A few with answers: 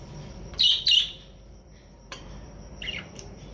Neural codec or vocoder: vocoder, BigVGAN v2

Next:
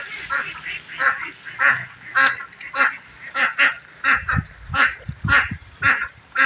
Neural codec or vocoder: none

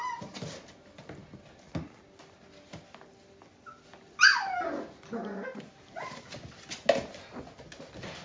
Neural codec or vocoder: none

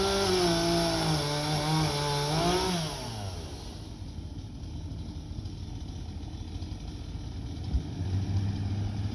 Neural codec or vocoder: none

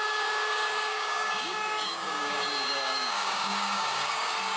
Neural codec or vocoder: codec, DAC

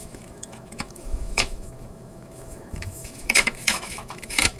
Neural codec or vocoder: autoencoder, DAC-VAE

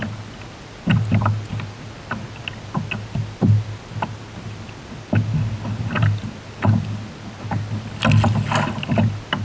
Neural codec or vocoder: none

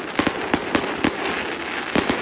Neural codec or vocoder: none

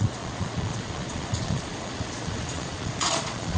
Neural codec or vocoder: vocoder, Vocos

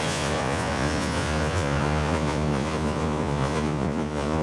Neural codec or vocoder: vocoder, Vocos